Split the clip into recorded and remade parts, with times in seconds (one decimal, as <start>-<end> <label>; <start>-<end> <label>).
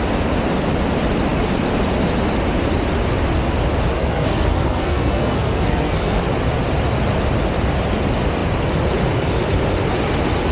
0.0-3.9 recorded; 3.9-6.2 remade; 6.2-10.5 recorded